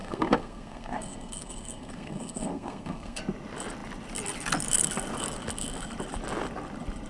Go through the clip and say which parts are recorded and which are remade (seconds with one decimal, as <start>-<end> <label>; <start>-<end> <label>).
0.0-3.2 remade; 3.2-7.1 recorded